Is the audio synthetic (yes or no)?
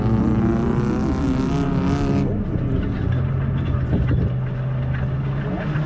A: no